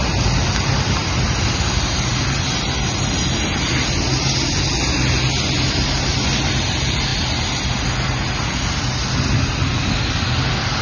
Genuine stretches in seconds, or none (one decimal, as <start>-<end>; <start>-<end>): 0.0-10.8